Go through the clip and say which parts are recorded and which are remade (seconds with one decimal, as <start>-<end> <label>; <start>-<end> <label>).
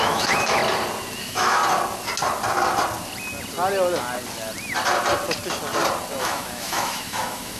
0.0-0.6 remade; 0.6-1.2 recorded; 1.2-1.6 remade; 1.6-6.2 recorded; 6.2-7.6 remade